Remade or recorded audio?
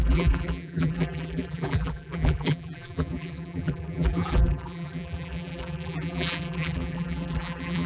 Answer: remade